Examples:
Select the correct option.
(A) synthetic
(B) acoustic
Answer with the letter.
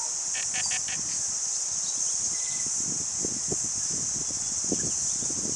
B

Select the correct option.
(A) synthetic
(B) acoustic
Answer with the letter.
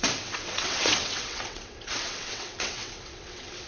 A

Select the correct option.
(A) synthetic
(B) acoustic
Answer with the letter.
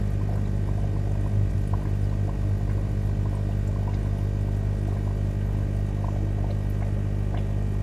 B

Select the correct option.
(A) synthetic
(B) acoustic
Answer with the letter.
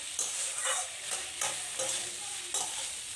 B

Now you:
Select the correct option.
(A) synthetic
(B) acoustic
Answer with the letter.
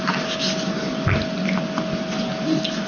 B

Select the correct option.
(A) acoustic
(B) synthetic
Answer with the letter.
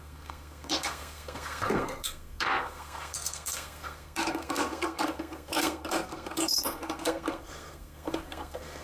B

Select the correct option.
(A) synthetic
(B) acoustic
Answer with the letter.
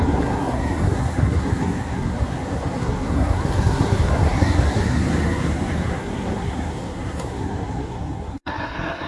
A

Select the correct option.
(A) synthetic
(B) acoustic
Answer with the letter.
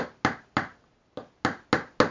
B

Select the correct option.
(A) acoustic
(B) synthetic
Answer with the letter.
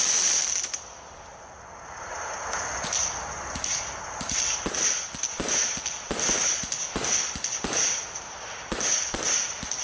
A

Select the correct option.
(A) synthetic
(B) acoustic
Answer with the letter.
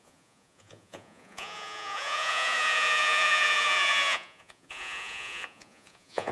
A